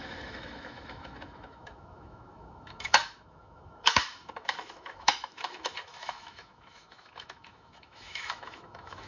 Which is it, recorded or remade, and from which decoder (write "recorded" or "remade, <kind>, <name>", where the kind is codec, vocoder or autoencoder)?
remade, autoencoder, DAC-VAE